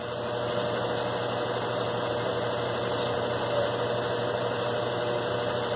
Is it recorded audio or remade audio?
recorded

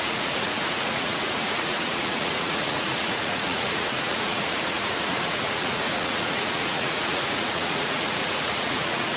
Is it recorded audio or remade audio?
remade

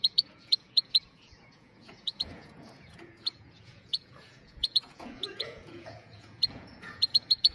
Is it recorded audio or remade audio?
remade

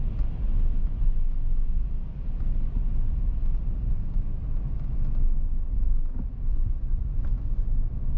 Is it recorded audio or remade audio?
recorded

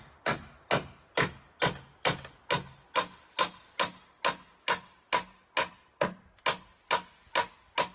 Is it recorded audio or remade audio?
recorded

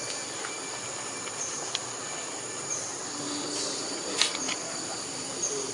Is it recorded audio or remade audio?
recorded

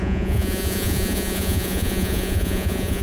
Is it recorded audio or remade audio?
remade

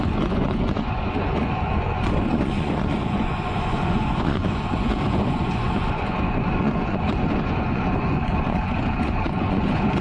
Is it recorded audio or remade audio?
remade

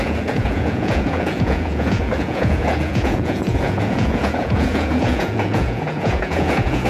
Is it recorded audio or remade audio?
remade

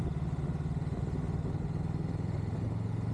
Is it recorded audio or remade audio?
recorded